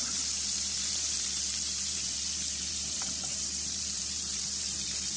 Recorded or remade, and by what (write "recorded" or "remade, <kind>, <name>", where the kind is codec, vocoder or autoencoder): remade, vocoder, BigVGAN v2